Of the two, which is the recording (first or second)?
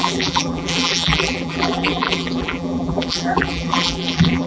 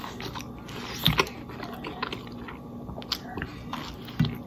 second